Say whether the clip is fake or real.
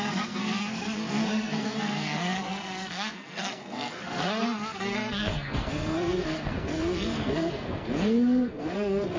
fake